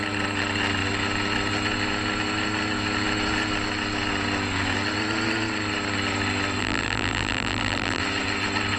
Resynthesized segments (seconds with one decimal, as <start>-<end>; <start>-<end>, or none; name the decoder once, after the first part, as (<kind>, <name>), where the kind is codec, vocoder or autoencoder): 6.6-8.0 (vocoder, BigVGAN v2)